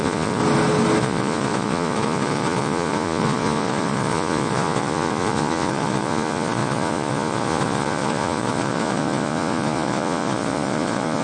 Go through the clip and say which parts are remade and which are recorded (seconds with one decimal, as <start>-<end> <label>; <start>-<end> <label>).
0.0-0.4 remade; 0.4-1.0 recorded; 1.0-11.2 remade